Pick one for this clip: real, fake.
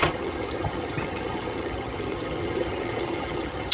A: fake